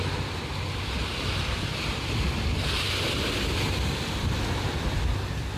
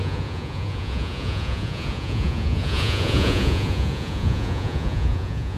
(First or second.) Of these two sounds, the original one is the first